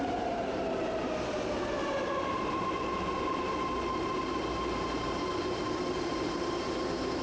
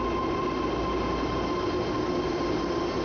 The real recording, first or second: second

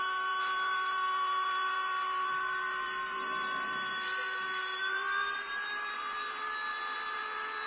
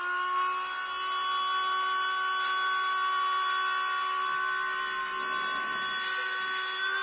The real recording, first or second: second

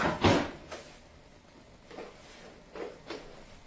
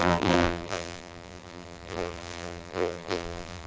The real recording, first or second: first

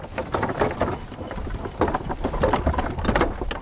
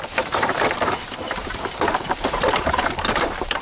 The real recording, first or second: first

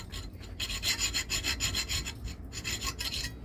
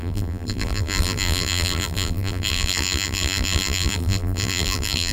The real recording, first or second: first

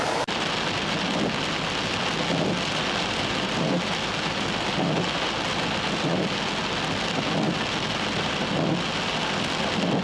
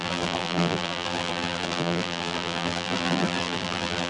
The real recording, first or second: first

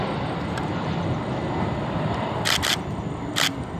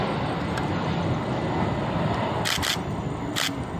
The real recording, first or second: second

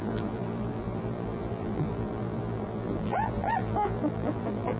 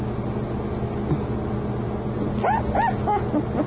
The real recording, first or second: second